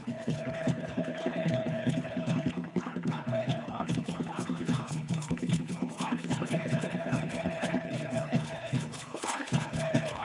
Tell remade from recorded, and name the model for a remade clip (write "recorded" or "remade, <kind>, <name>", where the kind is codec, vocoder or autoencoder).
remade, codec, HILCodec